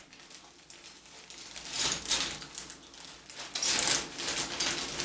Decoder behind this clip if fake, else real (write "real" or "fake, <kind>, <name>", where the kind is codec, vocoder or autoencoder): real